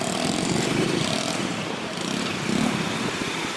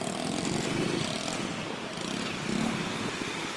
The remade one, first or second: first